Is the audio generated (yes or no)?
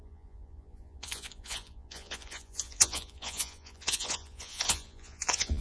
yes